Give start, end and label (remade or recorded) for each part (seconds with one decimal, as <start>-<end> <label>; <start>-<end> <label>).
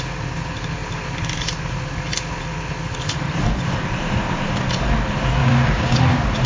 0.0-5.4 recorded; 5.4-6.0 remade; 6.0-6.5 recorded